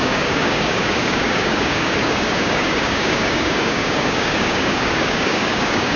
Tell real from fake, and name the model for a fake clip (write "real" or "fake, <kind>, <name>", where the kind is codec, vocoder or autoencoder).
fake, codec, DAC